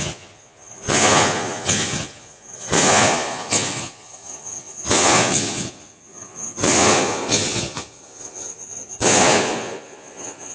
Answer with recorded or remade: remade